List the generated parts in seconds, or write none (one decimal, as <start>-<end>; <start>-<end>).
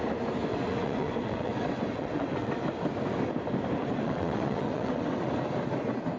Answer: 0.5-2.5; 3.8-5.3